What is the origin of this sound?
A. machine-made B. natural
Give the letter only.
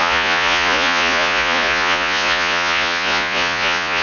A